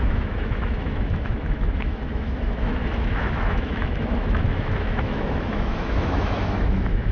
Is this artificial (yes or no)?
yes